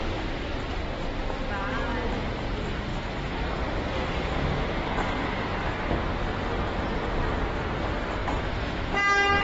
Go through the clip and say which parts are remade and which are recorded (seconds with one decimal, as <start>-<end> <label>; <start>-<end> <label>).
0.0-2.9 recorded; 2.9-3.6 remade; 3.6-8.2 recorded; 8.2-8.9 remade; 8.9-9.4 recorded